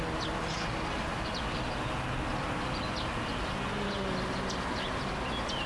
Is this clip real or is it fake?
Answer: real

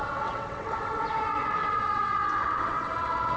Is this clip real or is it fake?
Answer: fake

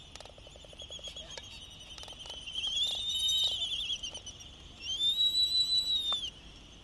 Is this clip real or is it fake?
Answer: real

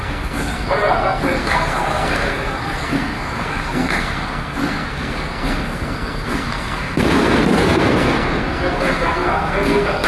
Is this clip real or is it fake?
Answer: fake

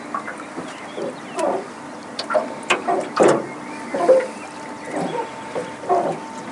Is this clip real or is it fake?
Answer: real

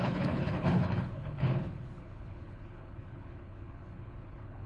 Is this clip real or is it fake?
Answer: fake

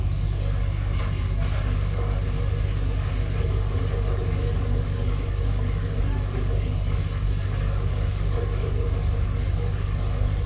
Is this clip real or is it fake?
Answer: fake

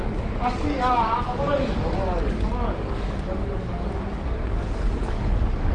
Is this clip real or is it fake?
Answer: fake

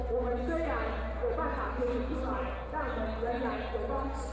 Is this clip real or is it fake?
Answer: real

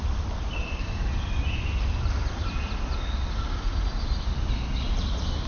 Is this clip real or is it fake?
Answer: real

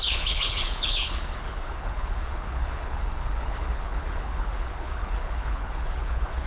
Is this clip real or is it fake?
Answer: fake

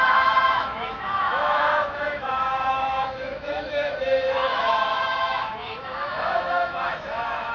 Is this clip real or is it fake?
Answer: fake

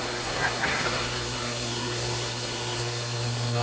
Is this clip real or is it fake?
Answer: fake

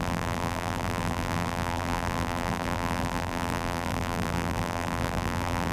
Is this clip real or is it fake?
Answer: fake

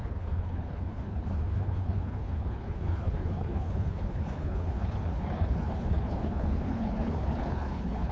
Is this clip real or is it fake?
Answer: fake